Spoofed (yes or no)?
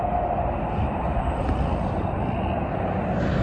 no